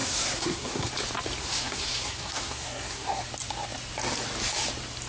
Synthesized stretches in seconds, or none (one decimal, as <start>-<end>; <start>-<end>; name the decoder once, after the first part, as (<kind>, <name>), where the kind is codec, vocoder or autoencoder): 0.0-0.9 (codec, SNAC); 1.4-3.3